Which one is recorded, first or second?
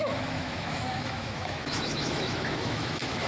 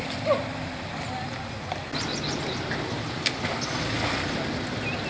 second